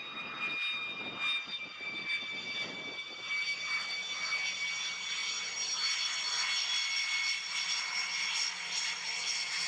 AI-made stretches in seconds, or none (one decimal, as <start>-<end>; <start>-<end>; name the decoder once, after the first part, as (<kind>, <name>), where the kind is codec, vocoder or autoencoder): none